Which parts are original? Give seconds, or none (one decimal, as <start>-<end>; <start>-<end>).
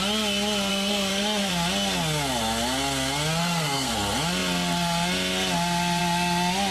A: 0.0-0.7; 1.5-3.4; 3.9-6.7